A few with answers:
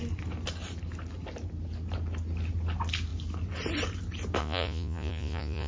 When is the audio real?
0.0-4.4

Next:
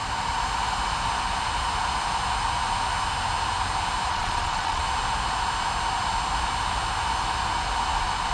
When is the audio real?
0.0-4.1; 4.8-8.3

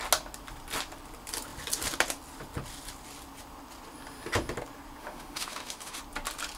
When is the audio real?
0.0-5.0; 6.0-6.6

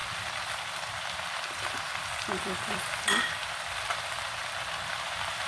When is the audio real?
none

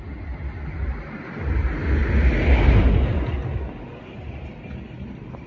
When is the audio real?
0.0-5.5